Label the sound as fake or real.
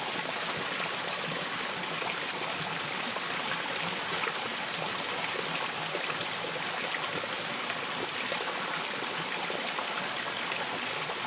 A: real